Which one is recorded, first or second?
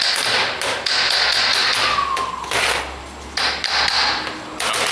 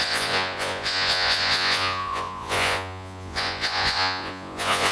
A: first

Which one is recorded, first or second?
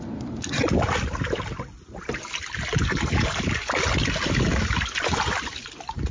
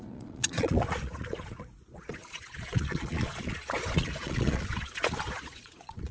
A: first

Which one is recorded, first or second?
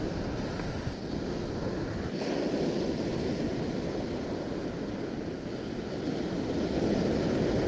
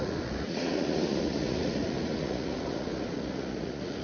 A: first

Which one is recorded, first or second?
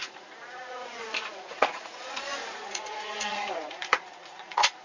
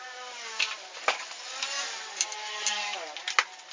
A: second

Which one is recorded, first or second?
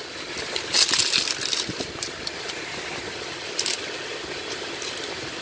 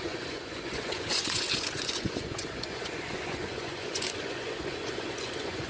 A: first